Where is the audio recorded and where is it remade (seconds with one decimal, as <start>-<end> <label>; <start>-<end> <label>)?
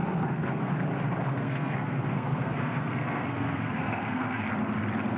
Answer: 0.0-0.7 remade; 0.7-1.3 recorded; 1.3-4.4 remade; 4.4-5.2 recorded